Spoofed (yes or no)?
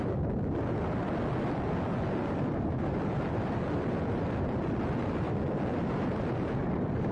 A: no